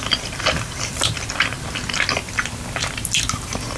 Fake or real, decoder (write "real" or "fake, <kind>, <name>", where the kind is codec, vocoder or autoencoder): real